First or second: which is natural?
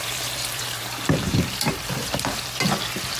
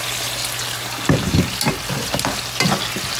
second